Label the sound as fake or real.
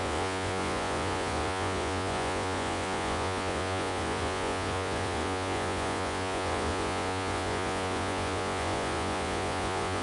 fake